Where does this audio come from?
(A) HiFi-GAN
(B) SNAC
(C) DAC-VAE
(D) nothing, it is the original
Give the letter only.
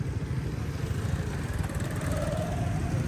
D